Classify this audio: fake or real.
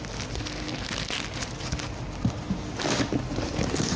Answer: real